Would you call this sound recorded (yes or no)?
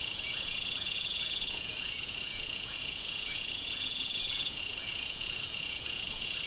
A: no